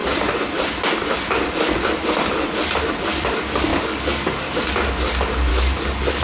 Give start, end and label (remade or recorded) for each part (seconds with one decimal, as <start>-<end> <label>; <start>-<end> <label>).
0.0-3.7 recorded; 3.7-4.7 remade; 4.7-5.5 recorded; 5.5-6.2 remade